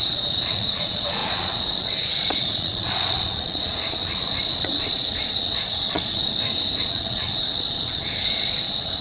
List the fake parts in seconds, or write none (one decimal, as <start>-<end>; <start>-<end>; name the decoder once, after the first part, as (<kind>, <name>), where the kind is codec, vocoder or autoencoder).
0.0-6.2 (vocoder, Vocos); 6.8-9.0